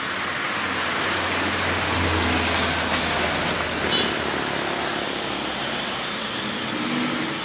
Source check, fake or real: real